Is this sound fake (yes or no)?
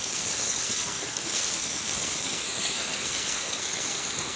yes